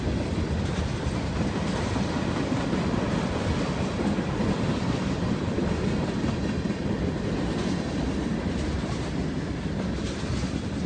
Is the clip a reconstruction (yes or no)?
no